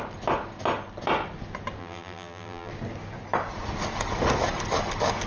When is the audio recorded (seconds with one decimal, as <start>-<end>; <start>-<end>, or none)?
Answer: 0.0-1.8; 2.7-5.3